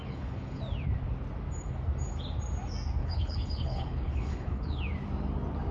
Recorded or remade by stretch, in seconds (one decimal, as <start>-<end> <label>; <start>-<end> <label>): 0.0-0.6 remade; 0.6-3.0 recorded; 3.0-4.8 remade; 4.8-5.7 recorded